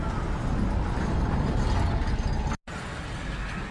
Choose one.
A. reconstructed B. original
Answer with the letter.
B